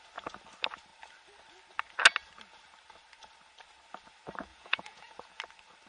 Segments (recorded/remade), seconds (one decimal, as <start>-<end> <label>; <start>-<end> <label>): 0.0-4.5 recorded; 4.5-5.4 remade; 5.4-5.9 recorded